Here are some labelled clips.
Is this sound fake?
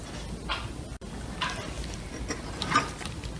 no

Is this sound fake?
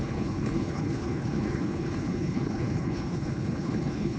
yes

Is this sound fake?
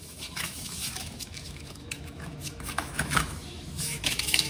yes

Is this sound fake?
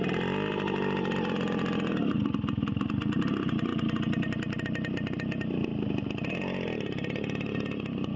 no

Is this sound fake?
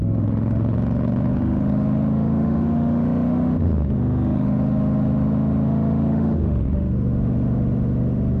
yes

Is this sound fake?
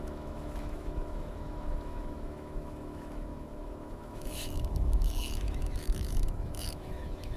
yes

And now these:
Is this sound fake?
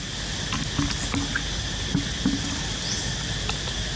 no